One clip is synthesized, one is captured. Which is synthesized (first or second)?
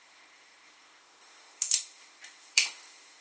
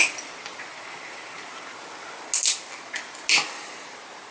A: first